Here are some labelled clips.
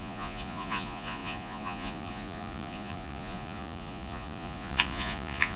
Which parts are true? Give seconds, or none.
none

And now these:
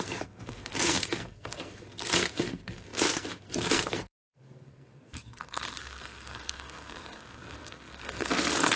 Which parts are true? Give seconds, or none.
none

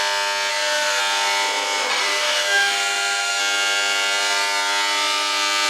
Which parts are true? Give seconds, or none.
0.0-0.5; 1.0-1.9; 3.4-5.7

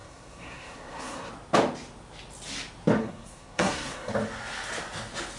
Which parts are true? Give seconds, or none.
1.3-3.0; 4.1-5.4

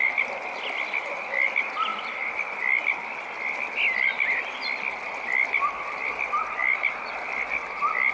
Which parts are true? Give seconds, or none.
0.0-8.1

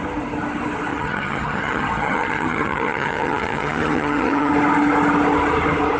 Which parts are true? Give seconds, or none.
0.0-0.9; 4.5-6.0